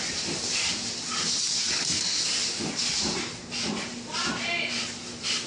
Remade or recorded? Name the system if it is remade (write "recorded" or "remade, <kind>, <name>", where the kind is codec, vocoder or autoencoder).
recorded